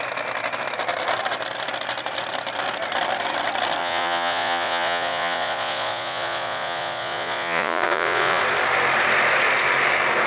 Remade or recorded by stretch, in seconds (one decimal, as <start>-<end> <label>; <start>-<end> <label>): 0.0-3.8 recorded; 3.8-8.4 remade; 8.4-10.3 recorded